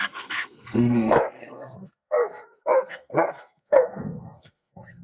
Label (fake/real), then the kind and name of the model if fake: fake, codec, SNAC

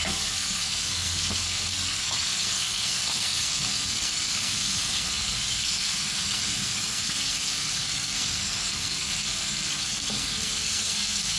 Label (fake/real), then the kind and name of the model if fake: fake, codec, SNAC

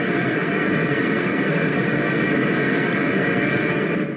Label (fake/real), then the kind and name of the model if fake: fake, codec, SNAC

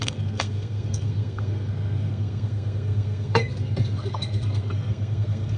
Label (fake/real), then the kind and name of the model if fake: fake, codec, SNAC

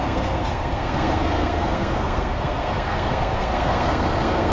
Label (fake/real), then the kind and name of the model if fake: fake, codec, SNAC